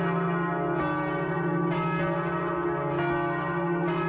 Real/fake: real